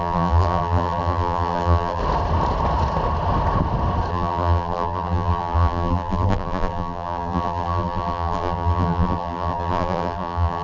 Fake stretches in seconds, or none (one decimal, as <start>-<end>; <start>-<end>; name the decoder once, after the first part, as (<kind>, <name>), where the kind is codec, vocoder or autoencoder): 0.0-2.0 (vocoder, BigVGAN v2); 4.1-10.6